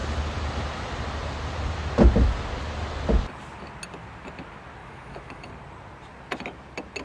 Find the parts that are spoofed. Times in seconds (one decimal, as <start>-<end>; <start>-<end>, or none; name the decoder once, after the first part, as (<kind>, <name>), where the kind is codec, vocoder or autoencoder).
4.8-5.5 (autoencoder, DAC-VAE)